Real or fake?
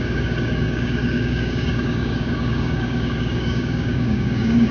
fake